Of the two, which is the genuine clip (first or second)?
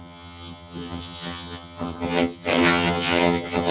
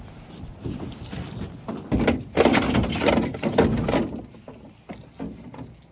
second